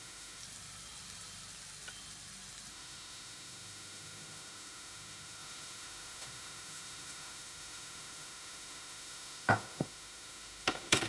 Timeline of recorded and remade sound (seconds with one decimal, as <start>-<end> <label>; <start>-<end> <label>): 0.0-0.4 remade; 0.4-2.7 recorded; 2.7-11.1 remade